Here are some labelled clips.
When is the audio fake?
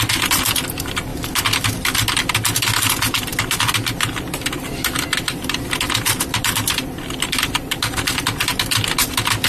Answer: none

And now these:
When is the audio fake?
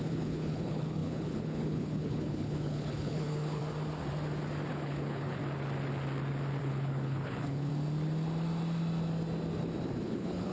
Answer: 0.0-3.6 (codec, HILCodec); 4.7-5.4; 6.6-7.7; 10.0-10.5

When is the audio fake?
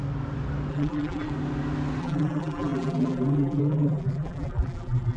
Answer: 0.7-1.3 (vocoder, BigVGAN v2); 2.0-5.2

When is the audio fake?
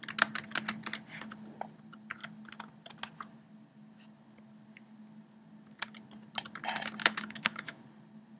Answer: 7.0-7.8 (autoencoder, DAC-VAE)